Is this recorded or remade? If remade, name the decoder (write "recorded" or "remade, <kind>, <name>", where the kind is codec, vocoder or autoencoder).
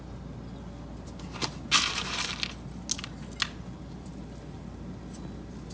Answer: recorded